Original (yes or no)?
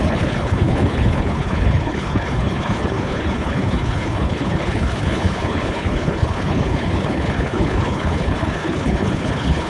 no